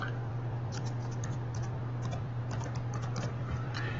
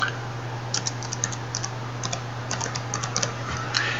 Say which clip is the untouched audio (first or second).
second